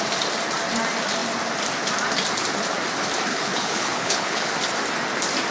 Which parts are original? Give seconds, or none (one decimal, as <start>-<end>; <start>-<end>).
0.0-3.3; 4.5-5.5